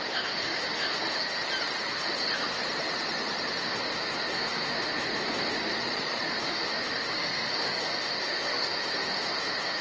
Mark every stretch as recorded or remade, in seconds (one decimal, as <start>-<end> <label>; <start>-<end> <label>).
0.0-1.4 remade; 1.4-1.9 recorded; 1.9-2.6 remade; 2.6-3.6 recorded; 3.6-5.7 remade; 5.7-6.3 recorded; 6.3-9.8 remade